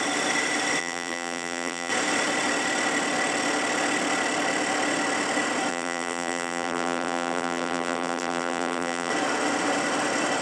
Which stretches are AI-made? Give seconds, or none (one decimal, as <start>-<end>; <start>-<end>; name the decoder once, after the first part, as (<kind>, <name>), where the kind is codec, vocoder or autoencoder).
0.8-1.9 (vocoder, BigVGAN v2); 5.7-9.1